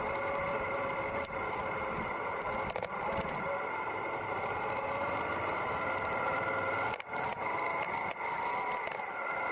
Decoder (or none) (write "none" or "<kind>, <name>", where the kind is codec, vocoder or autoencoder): none